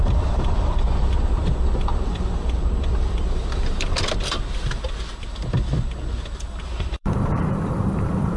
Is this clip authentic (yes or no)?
no